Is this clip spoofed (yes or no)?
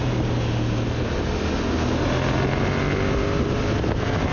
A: no